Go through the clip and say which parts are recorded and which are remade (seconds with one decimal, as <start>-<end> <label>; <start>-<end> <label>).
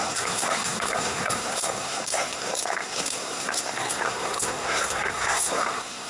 0.0-6.1 remade